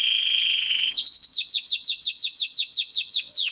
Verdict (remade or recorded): remade